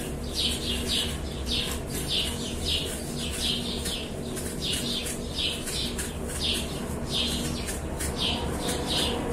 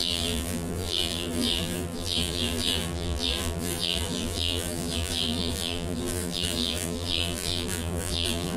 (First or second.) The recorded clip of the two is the first